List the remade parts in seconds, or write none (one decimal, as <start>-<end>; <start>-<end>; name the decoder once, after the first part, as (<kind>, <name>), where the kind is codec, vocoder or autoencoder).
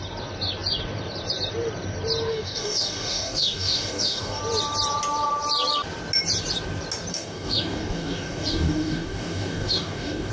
2.3-4.4 (codec, DAC); 7.1-10.3